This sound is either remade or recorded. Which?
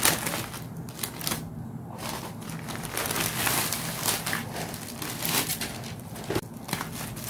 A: recorded